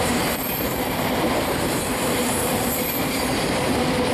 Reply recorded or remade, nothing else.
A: remade